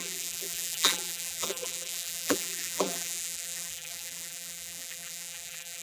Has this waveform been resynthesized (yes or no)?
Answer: yes